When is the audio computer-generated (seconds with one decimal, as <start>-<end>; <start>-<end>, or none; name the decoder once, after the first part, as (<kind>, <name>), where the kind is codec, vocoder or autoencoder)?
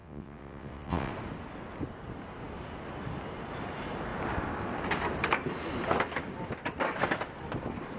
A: 0.0-1.1 (vocoder, WaveNeXt)